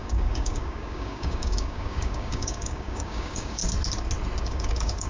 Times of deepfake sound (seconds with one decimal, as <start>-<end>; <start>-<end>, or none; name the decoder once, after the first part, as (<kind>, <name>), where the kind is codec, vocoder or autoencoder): 0.0-3.6 (codec, DAC); 4.4-5.1